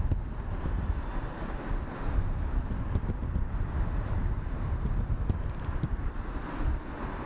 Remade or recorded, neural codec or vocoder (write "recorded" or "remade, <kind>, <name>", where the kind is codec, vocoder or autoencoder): recorded